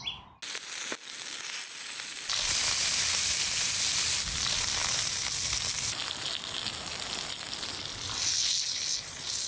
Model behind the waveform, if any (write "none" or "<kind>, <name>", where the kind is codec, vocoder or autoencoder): none